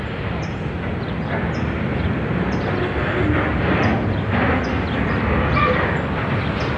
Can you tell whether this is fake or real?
real